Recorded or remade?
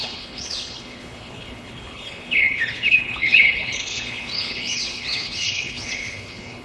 remade